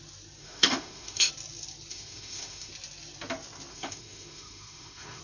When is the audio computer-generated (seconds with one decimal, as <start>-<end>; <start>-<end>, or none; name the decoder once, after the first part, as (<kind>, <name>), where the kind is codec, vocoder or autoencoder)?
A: 0.4-1.3 (autoencoder, DAC-VAE); 1.9-2.7; 3.7-5.2